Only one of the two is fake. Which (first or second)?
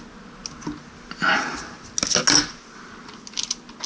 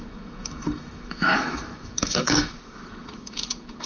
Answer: second